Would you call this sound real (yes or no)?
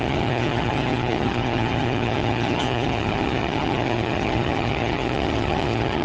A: no